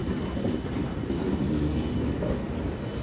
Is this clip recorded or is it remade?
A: recorded